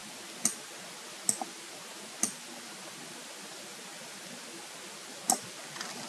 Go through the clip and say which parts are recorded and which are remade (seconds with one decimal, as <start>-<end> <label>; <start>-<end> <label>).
0.0-6.1 recorded